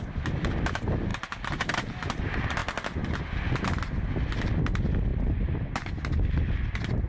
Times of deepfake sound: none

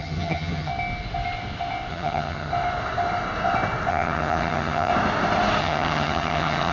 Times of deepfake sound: 0.0-0.7 (vocoder, HiFi-GAN); 1.9-2.5; 3.9-4.9; 5.6-6.7

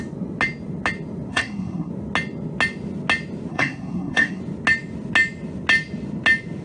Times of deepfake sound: 1.3-1.9 (codec, SNAC); 3.5-4.4

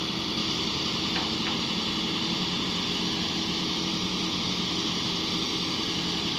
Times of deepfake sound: 0.4-2.7 (vocoder, BigVGAN v2)

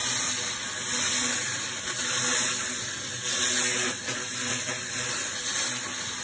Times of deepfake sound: none

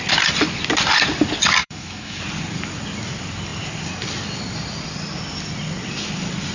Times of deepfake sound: 1.6-2.2 (autoencoder, DAC-VAE)

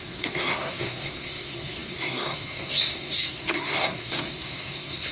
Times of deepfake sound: 0.0-5.1 (codec, SNAC)